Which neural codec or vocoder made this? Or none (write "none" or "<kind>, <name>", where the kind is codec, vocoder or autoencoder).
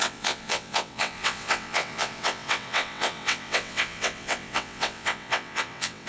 vocoder, WaveNeXt